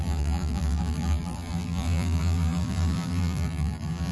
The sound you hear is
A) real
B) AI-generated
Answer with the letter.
B